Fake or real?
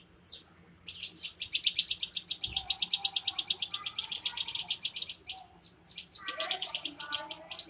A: real